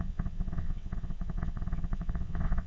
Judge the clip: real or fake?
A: fake